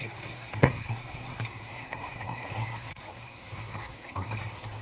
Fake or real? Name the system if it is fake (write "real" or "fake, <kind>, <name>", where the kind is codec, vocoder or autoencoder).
fake, codec, SNAC